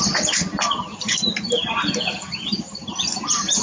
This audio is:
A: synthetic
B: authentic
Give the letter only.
B